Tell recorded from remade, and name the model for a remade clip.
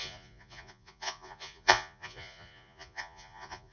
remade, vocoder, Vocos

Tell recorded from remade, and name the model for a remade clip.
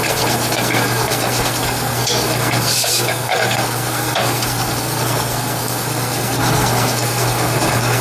remade, codec, SNAC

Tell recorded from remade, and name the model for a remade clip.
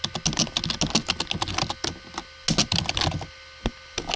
recorded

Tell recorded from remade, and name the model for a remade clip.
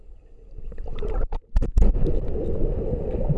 recorded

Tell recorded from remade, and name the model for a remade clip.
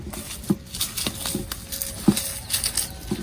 recorded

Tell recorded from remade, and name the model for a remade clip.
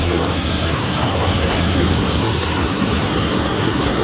remade, codec, SNAC